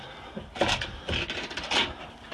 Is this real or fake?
real